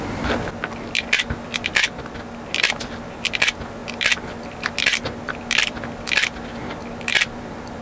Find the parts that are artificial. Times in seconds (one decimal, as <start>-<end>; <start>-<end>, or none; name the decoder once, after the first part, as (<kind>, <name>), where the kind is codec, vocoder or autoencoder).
none